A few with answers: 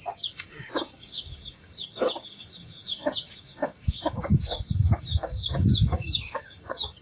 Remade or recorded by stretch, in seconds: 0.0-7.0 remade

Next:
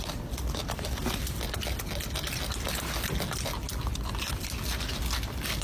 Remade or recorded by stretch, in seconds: 0.0-5.6 recorded

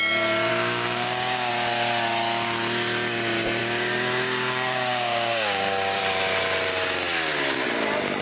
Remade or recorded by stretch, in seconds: 0.0-0.5 recorded; 0.5-1.5 remade; 1.5-3.6 recorded; 3.6-6.0 remade; 6.0-8.2 recorded

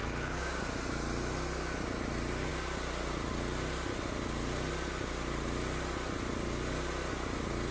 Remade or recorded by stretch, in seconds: 0.0-0.6 remade; 0.6-7.7 recorded